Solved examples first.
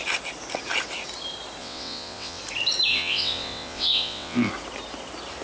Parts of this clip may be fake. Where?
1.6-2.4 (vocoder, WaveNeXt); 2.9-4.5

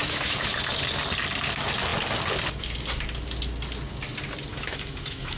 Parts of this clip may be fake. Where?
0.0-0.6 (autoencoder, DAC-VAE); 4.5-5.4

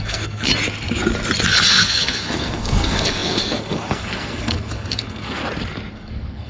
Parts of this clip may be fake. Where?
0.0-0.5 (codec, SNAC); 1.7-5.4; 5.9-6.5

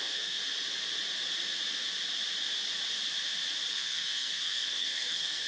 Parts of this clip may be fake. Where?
0.0-0.4 (codec, SNAC); 3.7-5.5

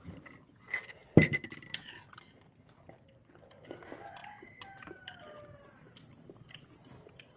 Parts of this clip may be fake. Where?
none

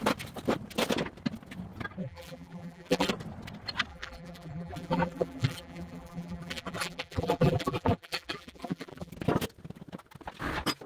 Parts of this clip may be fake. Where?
2.0-3.1 (vocoder, BigVGAN v2); 3.9-9.1